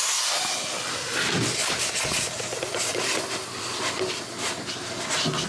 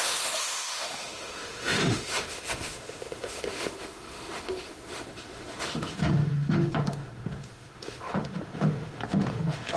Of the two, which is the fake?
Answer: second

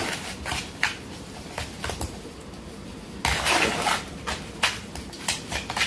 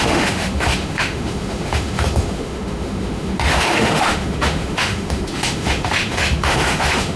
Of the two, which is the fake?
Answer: second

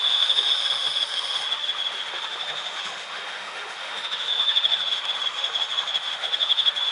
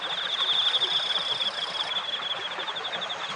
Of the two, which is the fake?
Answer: first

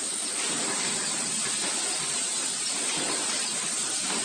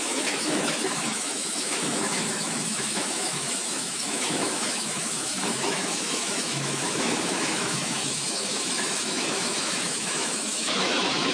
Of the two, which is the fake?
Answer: second